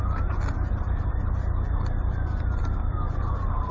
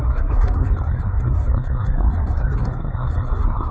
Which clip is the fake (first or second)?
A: second